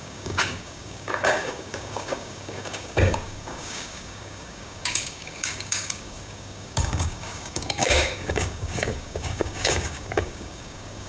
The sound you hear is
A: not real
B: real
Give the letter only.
A